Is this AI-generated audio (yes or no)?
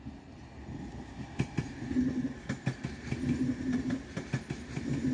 no